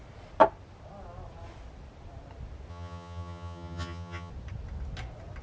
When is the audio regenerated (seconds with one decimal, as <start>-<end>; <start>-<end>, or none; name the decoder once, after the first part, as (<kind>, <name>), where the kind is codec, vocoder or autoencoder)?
2.7-4.3 (vocoder, HiFi-GAN)